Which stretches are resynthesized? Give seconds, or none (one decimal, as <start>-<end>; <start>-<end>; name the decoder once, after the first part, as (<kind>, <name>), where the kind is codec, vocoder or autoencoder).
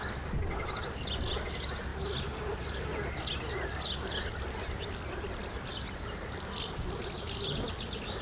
none